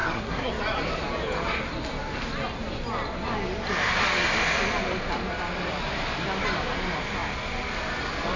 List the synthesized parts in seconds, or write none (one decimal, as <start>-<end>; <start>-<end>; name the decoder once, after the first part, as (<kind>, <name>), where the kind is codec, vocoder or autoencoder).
0.0-0.5 (codec, SNAC)